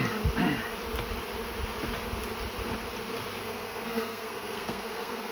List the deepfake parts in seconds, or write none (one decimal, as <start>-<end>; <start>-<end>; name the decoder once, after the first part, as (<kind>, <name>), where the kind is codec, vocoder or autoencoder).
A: 3.4-5.3 (codec, SNAC)

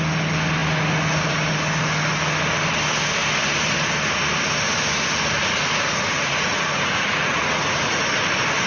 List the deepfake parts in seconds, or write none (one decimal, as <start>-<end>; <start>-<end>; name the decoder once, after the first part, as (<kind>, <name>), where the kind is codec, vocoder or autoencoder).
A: 5.4-8.0 (vocoder, Vocos)

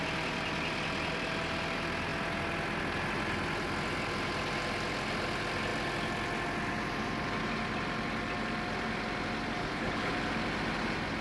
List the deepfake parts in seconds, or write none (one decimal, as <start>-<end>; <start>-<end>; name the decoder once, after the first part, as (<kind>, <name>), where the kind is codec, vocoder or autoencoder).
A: 9.6-10.1 (codec, HILCodec)

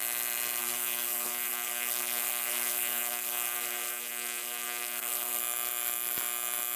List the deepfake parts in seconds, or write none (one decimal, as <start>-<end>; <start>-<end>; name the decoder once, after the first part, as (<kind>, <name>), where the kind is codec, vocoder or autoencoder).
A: 0.6-5.4 (codec, SNAC)

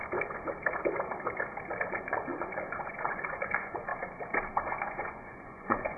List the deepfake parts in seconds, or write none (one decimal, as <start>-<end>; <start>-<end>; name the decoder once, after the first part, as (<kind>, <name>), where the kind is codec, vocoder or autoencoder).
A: 1.9-3.9 (vocoder, Vocos); 4.7-6.0

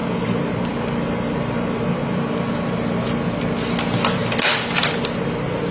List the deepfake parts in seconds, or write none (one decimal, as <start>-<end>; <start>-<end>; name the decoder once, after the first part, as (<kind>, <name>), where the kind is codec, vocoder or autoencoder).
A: none

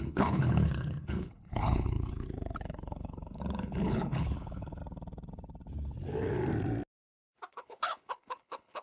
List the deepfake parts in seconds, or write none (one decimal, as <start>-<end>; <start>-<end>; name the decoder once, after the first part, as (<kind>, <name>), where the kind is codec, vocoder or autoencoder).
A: 0.0-4.8 (codec, HILCodec); 7.5-8.8